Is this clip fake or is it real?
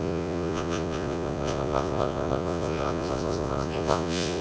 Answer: fake